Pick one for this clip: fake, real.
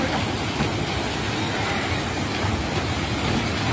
real